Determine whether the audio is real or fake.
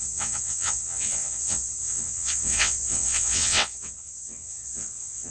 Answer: fake